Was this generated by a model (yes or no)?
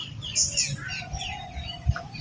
no